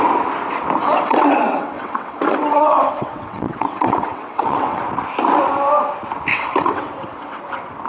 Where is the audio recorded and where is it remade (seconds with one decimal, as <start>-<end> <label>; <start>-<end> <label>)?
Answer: 0.0-0.8 recorded; 0.8-4.8 remade; 4.8-6.3 recorded; 6.3-7.4 remade; 7.4-7.9 recorded